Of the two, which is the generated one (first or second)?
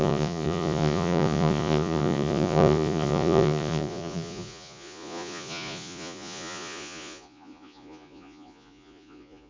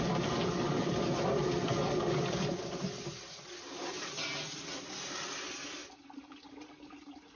first